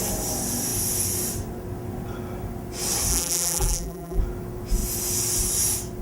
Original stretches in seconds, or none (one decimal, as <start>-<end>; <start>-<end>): 0.0-3.1; 4.2-6.0